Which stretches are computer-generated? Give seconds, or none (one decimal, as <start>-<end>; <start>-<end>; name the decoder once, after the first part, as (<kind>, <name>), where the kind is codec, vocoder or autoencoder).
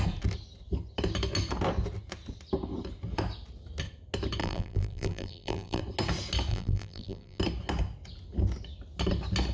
4.4-5.8 (vocoder, BigVGAN v2); 6.5-7.4